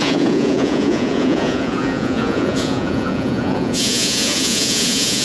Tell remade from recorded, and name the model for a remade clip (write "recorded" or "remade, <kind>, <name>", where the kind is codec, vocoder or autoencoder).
remade, vocoder, Vocos